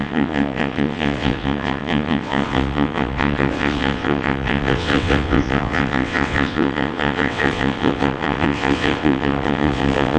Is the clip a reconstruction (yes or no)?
yes